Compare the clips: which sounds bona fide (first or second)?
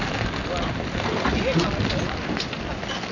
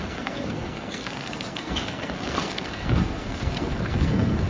first